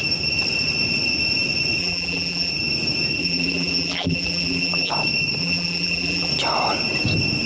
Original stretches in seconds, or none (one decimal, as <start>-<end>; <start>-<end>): 0.0-1.8; 2.5-3.2; 4.9-5.4; 6.3-7.5